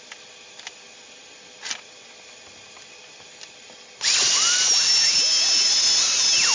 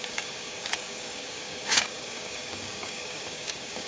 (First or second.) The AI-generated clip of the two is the second